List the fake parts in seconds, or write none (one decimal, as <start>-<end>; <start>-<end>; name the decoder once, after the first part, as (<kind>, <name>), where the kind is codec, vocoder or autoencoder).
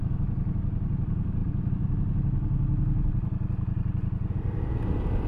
none